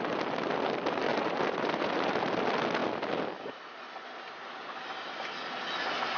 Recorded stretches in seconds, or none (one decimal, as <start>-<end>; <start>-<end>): 0.0-1.1; 2.4-6.2